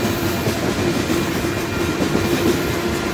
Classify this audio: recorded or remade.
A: recorded